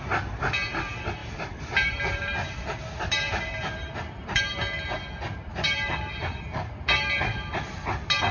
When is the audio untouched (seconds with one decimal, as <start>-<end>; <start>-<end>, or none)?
0.0-1.2; 4.4-5.5; 7.3-8.3